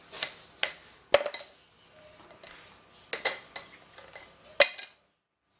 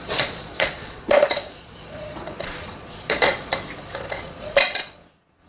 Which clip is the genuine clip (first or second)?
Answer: first